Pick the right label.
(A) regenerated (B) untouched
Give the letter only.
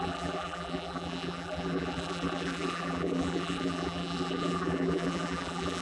A